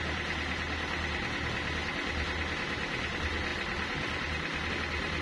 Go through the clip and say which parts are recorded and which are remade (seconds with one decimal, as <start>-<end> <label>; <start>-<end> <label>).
0.0-5.2 recorded